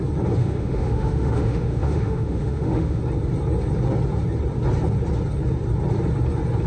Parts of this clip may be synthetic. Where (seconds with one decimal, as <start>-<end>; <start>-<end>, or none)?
0.4-3.0